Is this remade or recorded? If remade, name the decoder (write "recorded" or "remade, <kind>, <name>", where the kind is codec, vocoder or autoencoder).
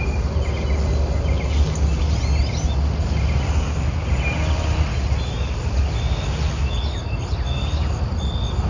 recorded